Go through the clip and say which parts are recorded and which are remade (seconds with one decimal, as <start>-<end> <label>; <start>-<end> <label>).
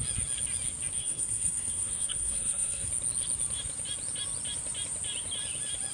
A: 0.0-1.0 recorded; 1.0-2.9 remade; 2.9-5.9 recorded